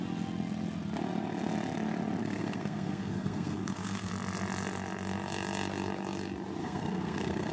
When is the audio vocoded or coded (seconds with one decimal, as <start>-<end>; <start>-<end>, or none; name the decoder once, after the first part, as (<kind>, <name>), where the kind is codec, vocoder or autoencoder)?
2.2-4.1 (codec, SNAC); 6.6-7.5

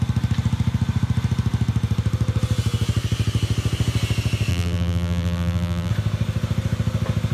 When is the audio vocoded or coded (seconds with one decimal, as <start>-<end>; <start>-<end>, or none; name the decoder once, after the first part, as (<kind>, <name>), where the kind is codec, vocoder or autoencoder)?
4.5-5.9 (vocoder, BigVGAN v2)